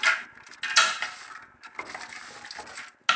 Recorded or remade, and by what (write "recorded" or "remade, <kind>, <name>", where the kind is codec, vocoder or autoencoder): recorded